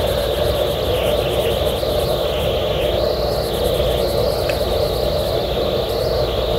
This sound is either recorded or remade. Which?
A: recorded